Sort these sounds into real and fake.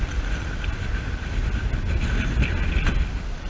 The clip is real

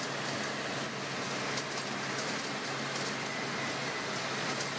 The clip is real